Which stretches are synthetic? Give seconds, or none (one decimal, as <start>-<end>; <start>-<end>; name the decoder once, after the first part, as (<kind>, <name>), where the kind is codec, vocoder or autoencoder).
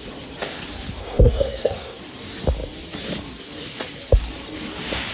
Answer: 1.0-2.0 (codec, SNAC)